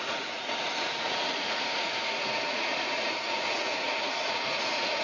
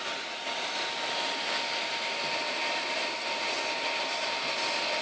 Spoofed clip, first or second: first